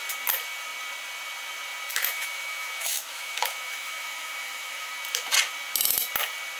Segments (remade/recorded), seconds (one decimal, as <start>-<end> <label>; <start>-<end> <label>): 0.0-1.9 recorded; 1.9-4.9 remade; 4.9-6.6 recorded